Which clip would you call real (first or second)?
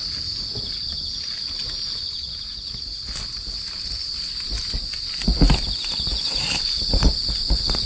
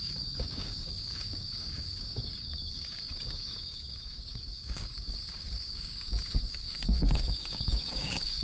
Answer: first